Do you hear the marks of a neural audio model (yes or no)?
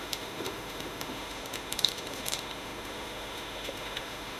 yes